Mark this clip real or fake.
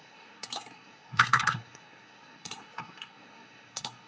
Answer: fake